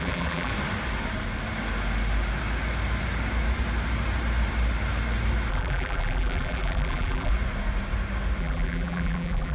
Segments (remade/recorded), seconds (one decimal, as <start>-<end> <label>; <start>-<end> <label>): 0.0-0.5 remade; 0.5-5.5 recorded; 5.5-7.3 remade; 7.3-8.4 recorded; 8.4-9.5 remade